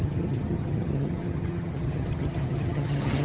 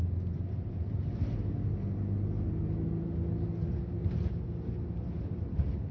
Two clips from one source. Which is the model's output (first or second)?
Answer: first